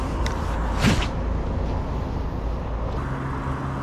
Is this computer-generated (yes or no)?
no